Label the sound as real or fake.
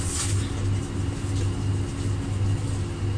real